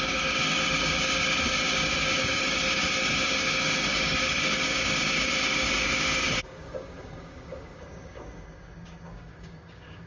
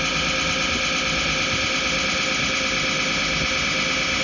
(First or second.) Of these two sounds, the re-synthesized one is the first